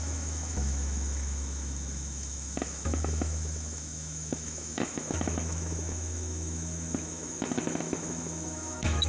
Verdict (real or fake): fake